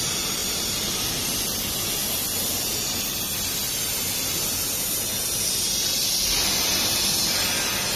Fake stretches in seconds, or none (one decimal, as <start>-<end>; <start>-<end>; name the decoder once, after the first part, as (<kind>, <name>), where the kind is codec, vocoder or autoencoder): 0.4-1.1 (vocoder, BigVGAN v2)